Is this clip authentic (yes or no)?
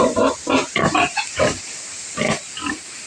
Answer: yes